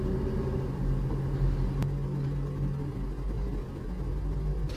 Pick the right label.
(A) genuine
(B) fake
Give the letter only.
A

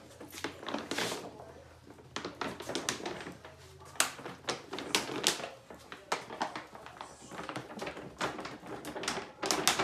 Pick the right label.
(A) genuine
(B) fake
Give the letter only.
A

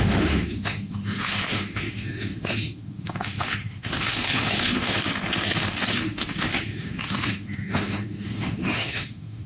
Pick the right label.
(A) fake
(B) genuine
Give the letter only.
A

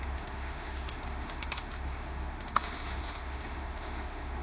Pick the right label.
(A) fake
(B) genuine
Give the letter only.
A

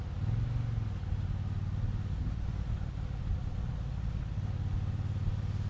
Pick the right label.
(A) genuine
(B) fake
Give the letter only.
A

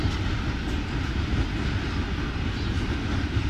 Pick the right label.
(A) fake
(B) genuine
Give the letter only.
B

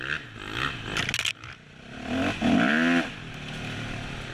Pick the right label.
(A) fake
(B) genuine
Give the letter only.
B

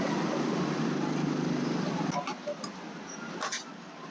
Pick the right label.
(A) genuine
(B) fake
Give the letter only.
A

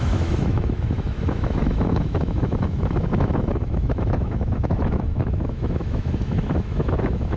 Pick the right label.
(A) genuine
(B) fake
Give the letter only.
B